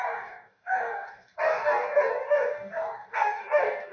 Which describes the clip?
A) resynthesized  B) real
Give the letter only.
A